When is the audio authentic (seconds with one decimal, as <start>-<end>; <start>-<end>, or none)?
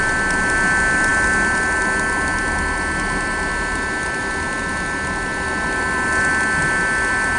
0.0-7.4